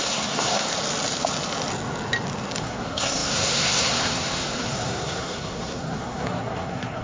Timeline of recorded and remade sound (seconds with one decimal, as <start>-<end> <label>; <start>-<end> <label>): 0.0-0.7 remade; 0.7-2.6 recorded; 2.6-7.0 remade